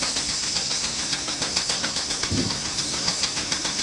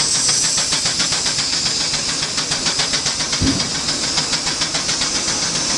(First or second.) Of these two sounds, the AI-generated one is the first